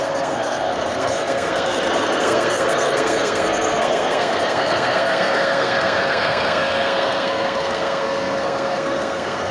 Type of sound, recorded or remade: remade